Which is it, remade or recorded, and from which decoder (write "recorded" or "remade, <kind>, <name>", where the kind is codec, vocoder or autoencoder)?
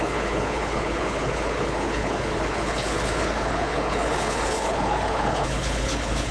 remade, codec, HILCodec